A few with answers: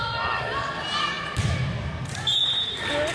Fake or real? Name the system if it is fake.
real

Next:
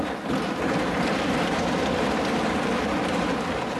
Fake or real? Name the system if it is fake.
real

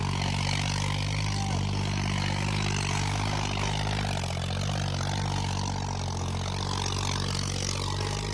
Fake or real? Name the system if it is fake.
real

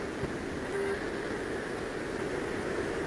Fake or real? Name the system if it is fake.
real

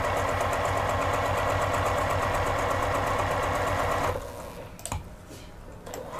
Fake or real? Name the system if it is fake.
real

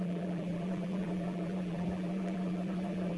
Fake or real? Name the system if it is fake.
fake, vocoder, BigVGAN v2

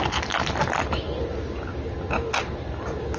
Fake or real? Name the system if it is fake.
real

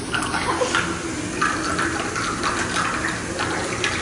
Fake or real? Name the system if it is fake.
real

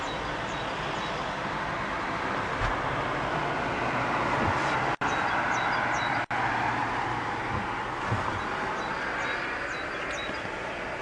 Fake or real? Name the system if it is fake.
real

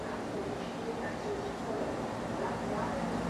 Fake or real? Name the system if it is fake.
real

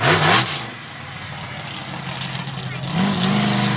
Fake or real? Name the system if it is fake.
real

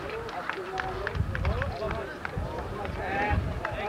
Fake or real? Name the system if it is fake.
real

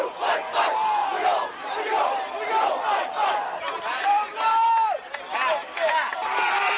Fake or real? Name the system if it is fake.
real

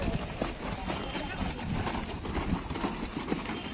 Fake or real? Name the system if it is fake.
fake, vocoder, BigVGAN v2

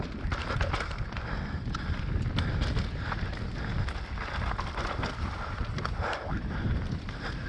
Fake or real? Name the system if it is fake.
real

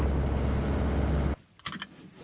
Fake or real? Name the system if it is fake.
real